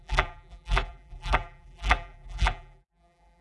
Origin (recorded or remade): remade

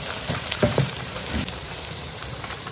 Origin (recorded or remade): remade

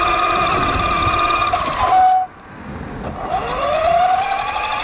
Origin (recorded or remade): recorded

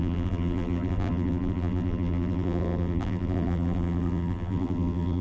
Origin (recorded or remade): remade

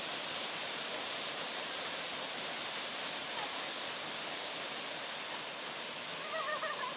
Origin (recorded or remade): remade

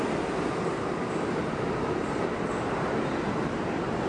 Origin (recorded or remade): remade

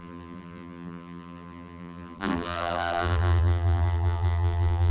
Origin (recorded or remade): remade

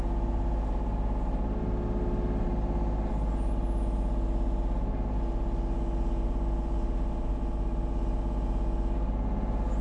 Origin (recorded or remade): recorded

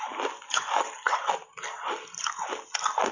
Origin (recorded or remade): recorded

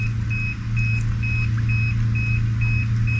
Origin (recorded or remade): recorded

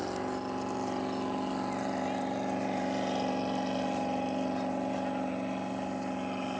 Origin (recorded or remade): recorded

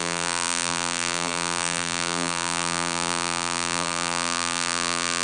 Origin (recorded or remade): remade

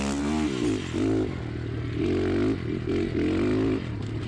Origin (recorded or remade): recorded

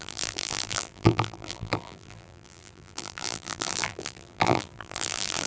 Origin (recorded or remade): remade